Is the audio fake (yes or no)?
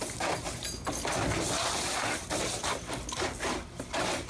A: no